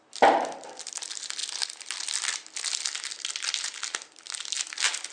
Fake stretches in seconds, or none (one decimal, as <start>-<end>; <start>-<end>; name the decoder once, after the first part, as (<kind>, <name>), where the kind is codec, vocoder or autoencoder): none